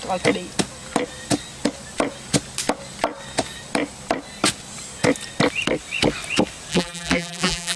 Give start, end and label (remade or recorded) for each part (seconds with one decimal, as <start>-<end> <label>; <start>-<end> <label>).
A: 0.0-6.7 recorded; 6.7-7.8 remade